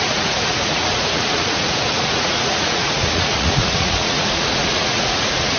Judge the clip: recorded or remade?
remade